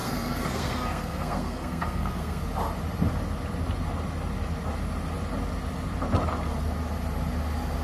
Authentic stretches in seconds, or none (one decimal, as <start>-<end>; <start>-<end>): 2.4-7.8